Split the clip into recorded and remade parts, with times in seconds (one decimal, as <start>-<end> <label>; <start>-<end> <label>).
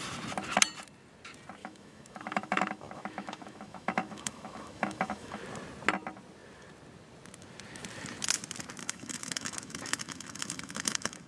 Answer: 0.0-1.6 recorded; 1.6-5.4 remade; 5.4-8.8 recorded; 8.8-11.3 remade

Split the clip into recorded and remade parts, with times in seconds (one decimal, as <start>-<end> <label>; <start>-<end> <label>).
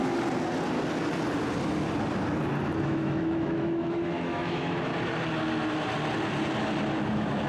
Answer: 0.0-2.8 recorded; 2.8-4.9 remade; 4.9-7.1 recorded; 7.1-7.5 remade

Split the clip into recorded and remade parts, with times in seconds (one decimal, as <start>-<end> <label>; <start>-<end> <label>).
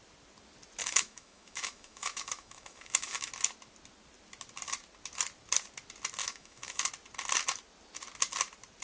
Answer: 0.0-0.8 recorded; 0.8-3.3 remade; 3.3-6.2 recorded; 6.2-6.9 remade; 6.9-8.8 recorded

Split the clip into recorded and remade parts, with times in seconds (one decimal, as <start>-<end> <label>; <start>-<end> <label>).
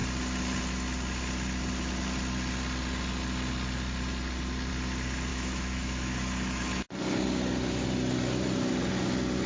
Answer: 0.0-5.3 recorded; 5.3-6.9 remade; 6.9-9.5 recorded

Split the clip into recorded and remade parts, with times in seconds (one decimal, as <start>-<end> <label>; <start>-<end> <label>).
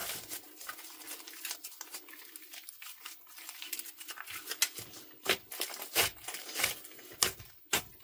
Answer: 0.0-8.0 recorded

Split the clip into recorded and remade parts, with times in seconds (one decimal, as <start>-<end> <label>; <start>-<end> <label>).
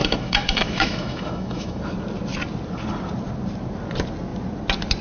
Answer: 0.0-1.8 remade; 1.8-5.0 recorded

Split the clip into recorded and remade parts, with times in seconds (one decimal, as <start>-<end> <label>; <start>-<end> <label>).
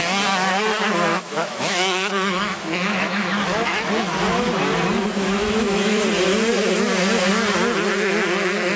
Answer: 0.0-1.1 recorded; 1.1-3.9 remade; 3.9-5.2 recorded; 5.2-6.0 remade; 6.0-8.8 recorded